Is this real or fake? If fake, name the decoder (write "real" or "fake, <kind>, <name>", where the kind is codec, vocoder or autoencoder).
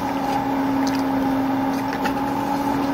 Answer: real